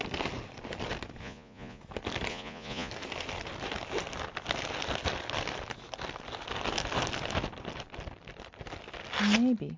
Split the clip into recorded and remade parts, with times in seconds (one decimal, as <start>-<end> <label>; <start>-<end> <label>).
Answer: 0.0-1.2 recorded; 1.2-1.8 remade; 1.8-2.3 recorded; 2.3-2.9 remade; 2.9-9.8 recorded